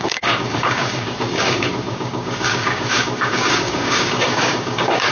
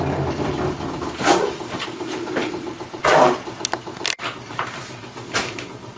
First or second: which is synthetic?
first